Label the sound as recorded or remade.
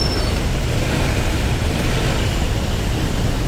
recorded